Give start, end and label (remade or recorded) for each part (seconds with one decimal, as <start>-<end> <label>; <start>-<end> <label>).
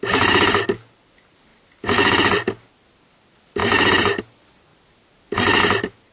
0.0-6.1 recorded